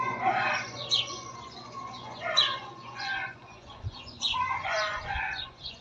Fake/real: fake